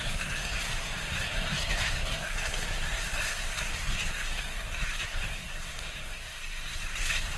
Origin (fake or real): fake